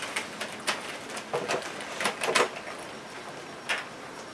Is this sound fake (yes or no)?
no